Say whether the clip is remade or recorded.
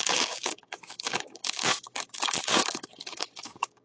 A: remade